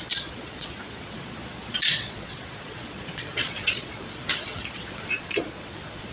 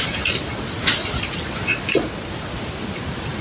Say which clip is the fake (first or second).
first